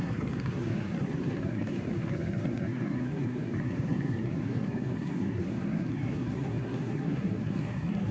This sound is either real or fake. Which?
fake